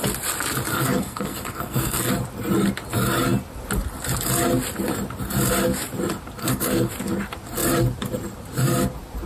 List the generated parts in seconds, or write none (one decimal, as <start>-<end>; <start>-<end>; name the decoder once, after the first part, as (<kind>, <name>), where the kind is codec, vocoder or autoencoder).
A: 0.7-2.1 (codec, SNAC); 6.4-6.9